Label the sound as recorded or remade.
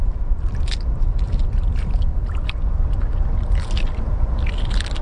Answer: recorded